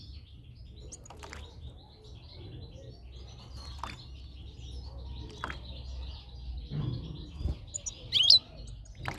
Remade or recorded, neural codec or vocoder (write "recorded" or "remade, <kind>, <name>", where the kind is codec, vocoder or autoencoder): recorded